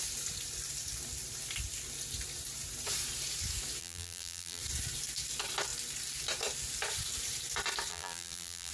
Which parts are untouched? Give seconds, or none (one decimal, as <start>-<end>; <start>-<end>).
0.0-3.8; 4.6-7.9